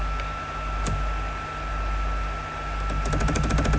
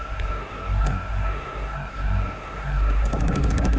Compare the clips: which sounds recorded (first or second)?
first